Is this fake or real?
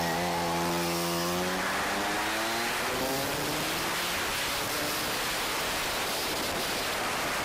real